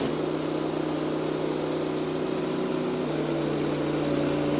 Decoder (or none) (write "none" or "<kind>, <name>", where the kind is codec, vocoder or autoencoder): none